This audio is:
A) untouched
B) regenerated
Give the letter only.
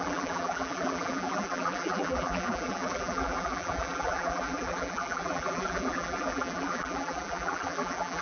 B